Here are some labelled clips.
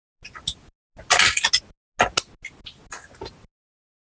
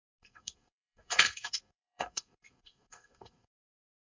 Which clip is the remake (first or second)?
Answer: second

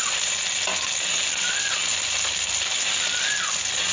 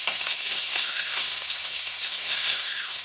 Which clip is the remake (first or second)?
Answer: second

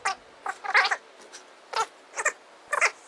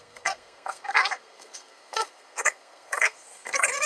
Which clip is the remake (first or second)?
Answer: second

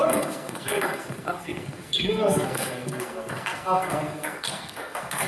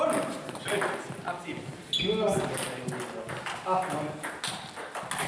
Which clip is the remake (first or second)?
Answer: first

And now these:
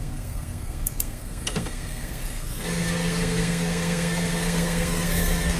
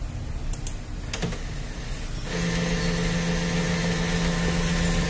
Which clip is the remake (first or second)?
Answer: first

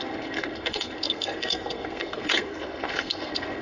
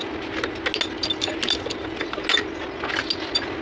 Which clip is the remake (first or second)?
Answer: first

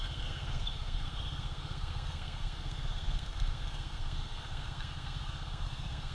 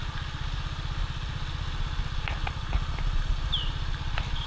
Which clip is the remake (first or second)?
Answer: first